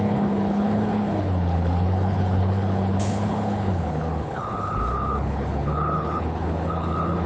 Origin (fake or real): fake